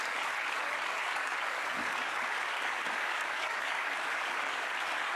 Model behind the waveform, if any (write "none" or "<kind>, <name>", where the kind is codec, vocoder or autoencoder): codec, DAC